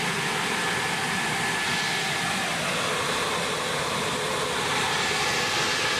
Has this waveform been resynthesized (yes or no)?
no